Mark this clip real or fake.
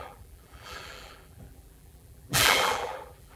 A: fake